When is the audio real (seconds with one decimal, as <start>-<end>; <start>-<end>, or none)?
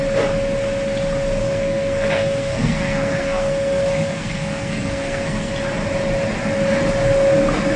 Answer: 0.0-1.4; 5.5-7.8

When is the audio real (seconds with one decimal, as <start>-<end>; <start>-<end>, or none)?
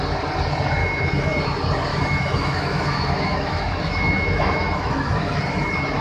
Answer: 0.0-0.8; 1.4-1.9; 5.4-6.0